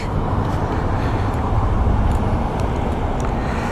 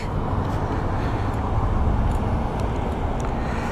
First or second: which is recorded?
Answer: second